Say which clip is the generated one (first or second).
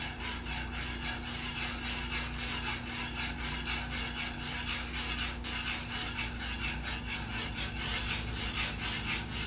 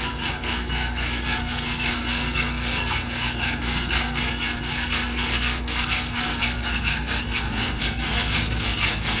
second